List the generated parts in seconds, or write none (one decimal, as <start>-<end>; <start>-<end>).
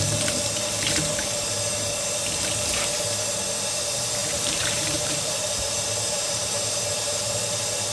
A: 4.2-7.2